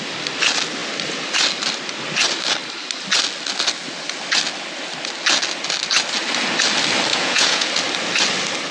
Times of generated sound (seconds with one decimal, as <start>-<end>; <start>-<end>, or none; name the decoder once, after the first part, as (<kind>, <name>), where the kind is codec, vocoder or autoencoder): 7.1-7.7 (vocoder, Vocos)